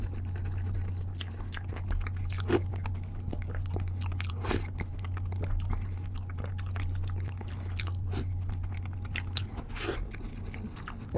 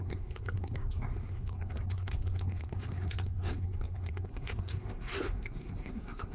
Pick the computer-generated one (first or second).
second